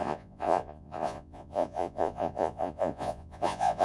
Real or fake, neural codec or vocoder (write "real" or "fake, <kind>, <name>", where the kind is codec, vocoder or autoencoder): fake, vocoder, Vocos